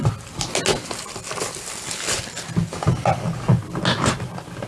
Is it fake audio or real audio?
real